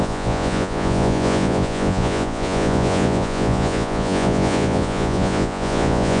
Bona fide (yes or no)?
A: no